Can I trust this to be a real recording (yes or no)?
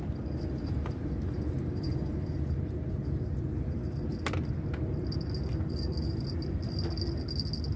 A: yes